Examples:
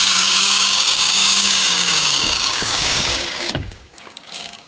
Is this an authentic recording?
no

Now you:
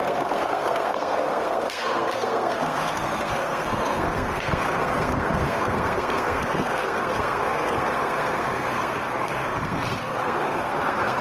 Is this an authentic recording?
no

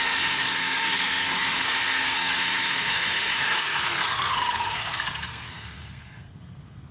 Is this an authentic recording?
no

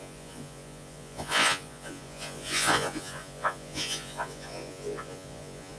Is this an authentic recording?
no